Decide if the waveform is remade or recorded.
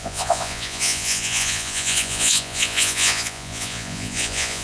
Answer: remade